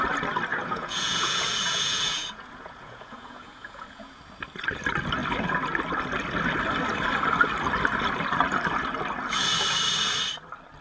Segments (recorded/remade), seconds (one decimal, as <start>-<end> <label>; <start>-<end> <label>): 0.0-0.5 recorded; 0.5-4.2 remade; 4.2-10.8 recorded